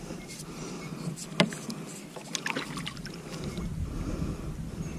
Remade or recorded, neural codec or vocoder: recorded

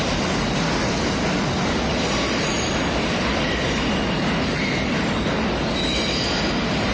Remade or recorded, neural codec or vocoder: recorded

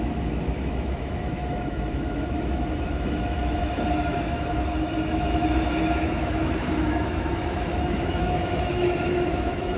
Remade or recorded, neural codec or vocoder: remade, autoencoder, DAC-VAE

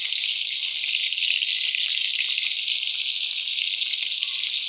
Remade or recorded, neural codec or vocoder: recorded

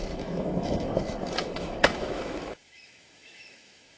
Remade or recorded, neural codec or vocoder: remade, autoencoder, DAC-VAE